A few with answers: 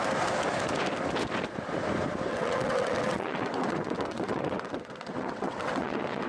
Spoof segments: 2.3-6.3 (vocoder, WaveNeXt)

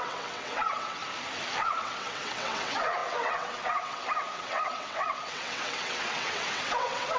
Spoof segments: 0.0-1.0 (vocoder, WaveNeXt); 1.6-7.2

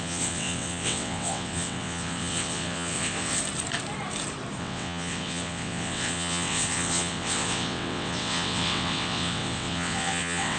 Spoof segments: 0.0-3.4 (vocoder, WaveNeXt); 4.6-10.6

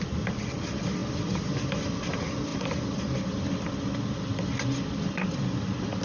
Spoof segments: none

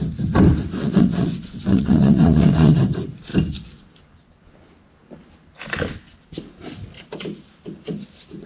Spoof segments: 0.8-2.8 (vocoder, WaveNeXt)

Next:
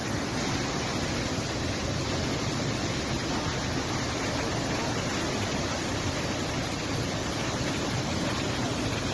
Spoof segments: none

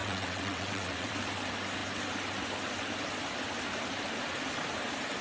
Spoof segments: 0.0-1.1 (vocoder, WaveNeXt)

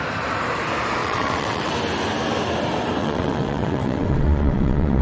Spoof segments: 1.0-1.7 (vocoder, WaveNeXt); 3.0-5.0